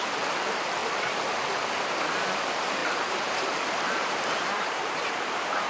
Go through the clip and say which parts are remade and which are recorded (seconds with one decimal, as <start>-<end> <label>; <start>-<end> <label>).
0.0-0.8 remade; 0.8-1.7 recorded; 1.7-5.7 remade